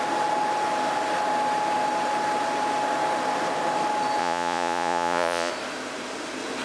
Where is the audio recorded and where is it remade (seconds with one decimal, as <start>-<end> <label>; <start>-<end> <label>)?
0.0-4.2 recorded; 4.2-5.5 remade; 5.5-6.6 recorded